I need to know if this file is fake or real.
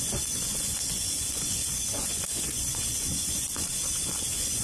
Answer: fake